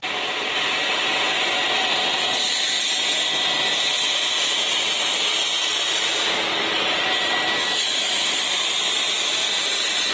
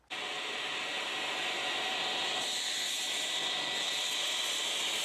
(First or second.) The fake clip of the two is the first